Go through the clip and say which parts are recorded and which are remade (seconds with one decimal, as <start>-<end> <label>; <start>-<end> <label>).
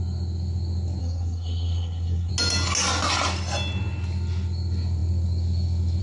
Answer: 0.0-1.0 recorded; 1.0-2.3 remade; 2.3-6.0 recorded